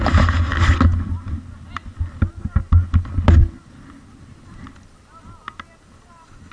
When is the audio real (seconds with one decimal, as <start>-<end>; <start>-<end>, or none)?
0.0-6.5